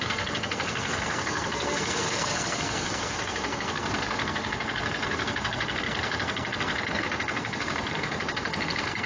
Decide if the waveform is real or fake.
fake